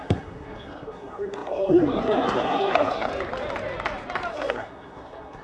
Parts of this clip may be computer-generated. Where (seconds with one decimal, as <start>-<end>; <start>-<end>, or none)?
0.0-3.1; 4.3-5.4